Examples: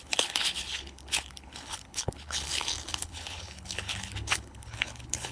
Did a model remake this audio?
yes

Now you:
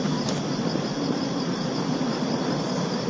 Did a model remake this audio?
no